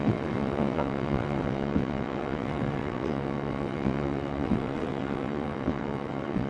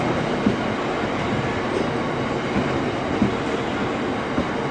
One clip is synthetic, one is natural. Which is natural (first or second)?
second